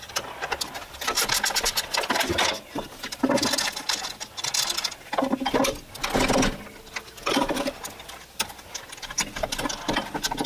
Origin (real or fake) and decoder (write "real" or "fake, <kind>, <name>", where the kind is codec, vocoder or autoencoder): real